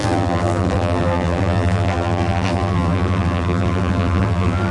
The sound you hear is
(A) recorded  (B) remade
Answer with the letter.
B